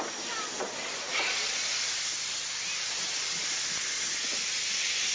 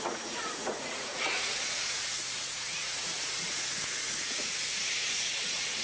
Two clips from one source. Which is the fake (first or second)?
second